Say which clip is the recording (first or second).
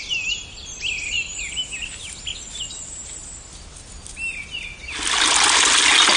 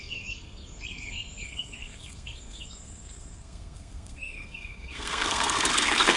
first